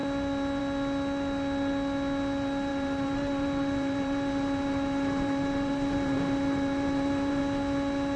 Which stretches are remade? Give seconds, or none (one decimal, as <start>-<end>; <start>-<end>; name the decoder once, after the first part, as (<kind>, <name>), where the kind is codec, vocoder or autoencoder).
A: 2.7-7.4 (vocoder, BigVGAN v2)